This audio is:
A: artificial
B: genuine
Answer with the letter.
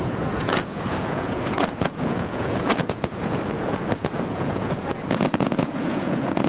A